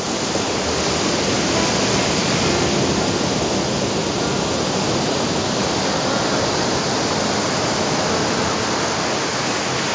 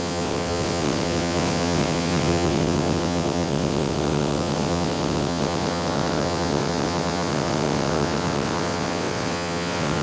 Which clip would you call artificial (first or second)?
second